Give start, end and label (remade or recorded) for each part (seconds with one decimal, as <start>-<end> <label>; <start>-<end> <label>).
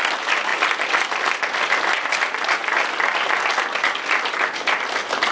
0.0-5.3 recorded